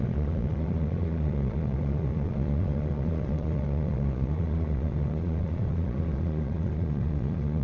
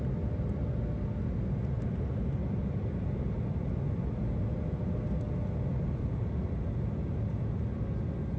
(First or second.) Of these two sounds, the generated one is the first